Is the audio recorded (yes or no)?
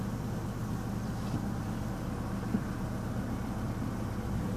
yes